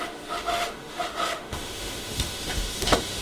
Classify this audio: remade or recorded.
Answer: remade